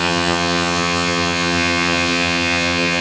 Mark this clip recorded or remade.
remade